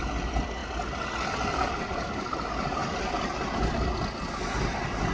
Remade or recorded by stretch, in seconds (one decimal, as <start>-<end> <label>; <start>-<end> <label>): 0.0-5.1 recorded